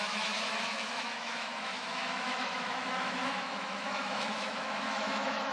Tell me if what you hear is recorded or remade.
remade